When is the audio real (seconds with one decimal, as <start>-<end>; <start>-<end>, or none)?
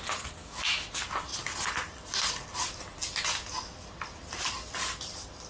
0.0-0.4; 0.9-5.5